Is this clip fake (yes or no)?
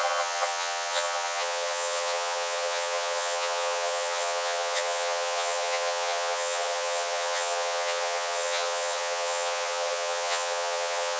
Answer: yes